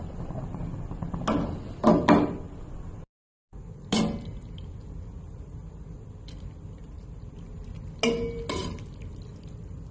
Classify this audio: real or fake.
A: real